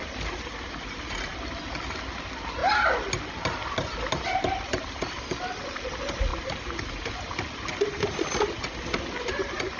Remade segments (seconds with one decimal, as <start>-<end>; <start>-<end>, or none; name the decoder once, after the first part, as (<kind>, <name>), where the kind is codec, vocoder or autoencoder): none